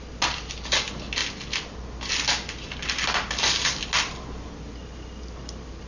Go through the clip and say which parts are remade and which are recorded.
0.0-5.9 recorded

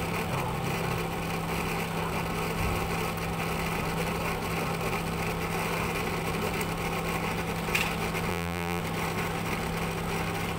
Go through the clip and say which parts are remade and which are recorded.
0.0-8.3 recorded; 8.3-8.8 remade; 8.8-10.6 recorded

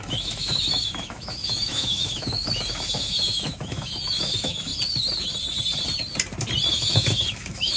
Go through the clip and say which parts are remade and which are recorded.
0.0-4.7 remade; 4.7-6.7 recorded; 6.7-7.8 remade

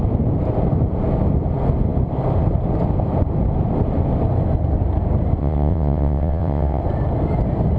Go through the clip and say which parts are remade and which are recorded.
0.0-5.4 recorded; 5.4-6.8 remade; 6.8-7.8 recorded

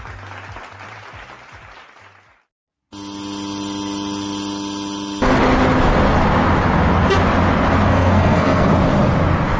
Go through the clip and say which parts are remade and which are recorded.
0.0-7.9 recorded; 7.9-8.7 remade; 8.7-9.6 recorded

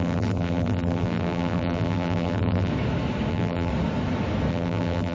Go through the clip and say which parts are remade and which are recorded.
0.0-2.7 remade; 2.7-3.3 recorded; 3.3-3.7 remade; 3.7-4.5 recorded; 4.5-5.1 remade

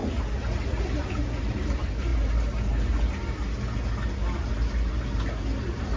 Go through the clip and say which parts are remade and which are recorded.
0.0-1.0 recorded; 1.0-2.1 remade; 2.1-5.6 recorded; 5.6-6.0 remade

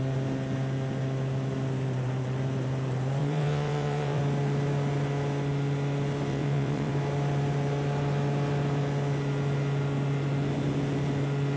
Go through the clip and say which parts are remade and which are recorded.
0.0-3.2 recorded; 3.2-4.2 remade; 4.2-6.3 recorded; 6.3-6.9 remade; 6.9-11.6 recorded